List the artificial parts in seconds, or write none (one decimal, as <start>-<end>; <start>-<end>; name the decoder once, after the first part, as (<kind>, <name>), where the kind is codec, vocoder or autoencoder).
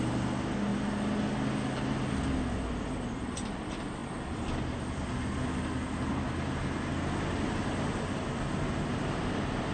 none